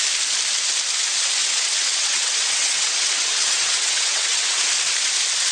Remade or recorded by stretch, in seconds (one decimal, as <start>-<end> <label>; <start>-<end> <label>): 0.0-1.4 recorded; 1.4-4.7 remade; 4.7-5.5 recorded